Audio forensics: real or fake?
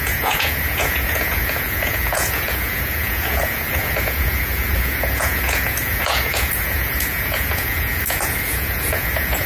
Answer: fake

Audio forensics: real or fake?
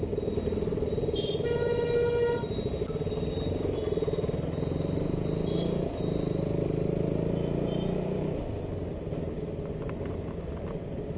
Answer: real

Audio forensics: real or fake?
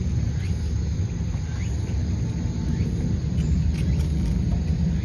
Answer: real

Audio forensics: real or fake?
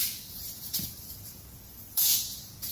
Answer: fake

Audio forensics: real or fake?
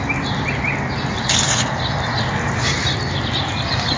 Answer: real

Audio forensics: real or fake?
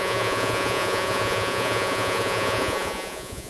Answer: fake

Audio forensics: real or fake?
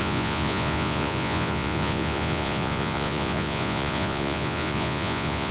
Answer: fake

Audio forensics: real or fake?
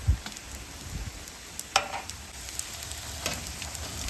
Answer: real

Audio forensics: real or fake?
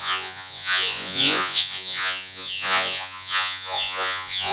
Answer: fake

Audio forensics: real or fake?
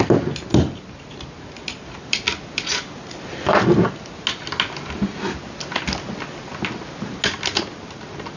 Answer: real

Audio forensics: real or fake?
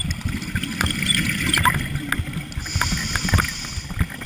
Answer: real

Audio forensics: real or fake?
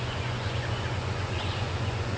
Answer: fake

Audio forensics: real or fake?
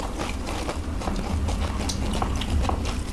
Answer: real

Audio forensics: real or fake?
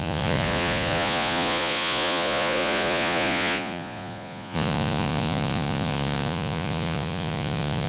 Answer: fake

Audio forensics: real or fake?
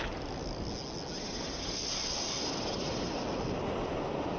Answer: real